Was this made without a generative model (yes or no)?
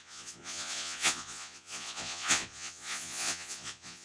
no